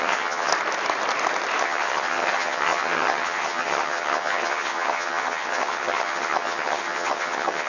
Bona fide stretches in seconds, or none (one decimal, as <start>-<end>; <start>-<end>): 0.5-1.6